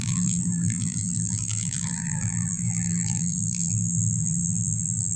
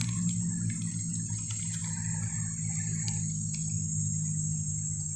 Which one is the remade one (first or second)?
first